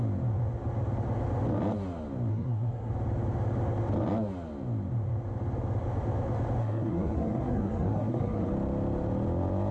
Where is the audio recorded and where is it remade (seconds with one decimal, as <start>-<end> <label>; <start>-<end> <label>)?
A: 0.0-2.3 recorded; 2.3-2.9 remade; 2.9-6.6 recorded; 6.6-8.5 remade; 8.5-9.7 recorded